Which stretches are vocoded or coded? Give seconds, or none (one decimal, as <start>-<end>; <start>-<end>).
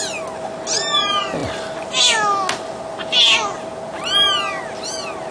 none